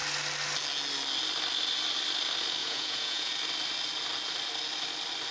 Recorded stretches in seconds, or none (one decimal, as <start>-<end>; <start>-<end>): 0.0-2.6; 3.3-5.3